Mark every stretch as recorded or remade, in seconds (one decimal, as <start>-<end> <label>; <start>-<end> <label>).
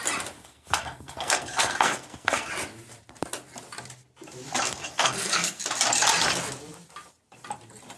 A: 0.0-0.4 recorded; 0.4-2.5 remade; 2.5-4.8 recorded; 4.8-5.6 remade; 5.6-8.0 recorded